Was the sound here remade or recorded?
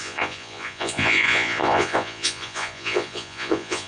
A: remade